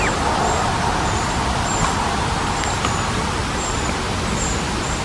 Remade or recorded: recorded